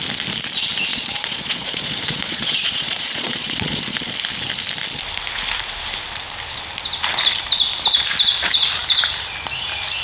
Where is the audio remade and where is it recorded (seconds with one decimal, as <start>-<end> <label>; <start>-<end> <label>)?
0.0-0.9 recorded; 0.9-3.8 remade; 3.8-10.0 recorded